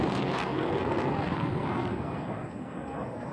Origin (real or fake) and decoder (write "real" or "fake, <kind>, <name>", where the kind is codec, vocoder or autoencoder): fake, codec, SNAC